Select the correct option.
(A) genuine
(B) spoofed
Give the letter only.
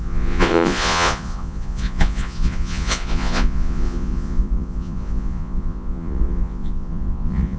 B